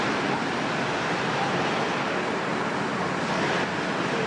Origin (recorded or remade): recorded